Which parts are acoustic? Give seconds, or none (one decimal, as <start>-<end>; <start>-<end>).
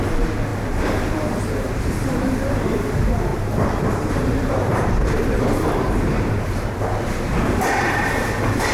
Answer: none